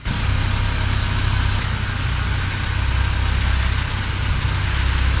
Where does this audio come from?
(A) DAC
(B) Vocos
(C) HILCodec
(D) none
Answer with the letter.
D